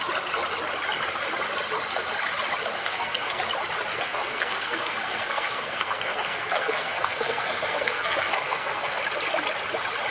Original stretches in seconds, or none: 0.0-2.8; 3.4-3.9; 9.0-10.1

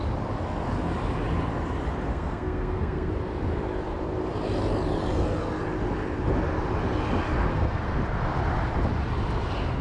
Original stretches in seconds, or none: 0.0-2.1; 3.1-7.5; 8.0-9.8

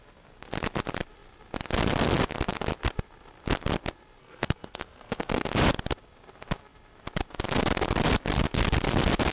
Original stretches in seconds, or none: 0.0-4.2; 5.5-9.3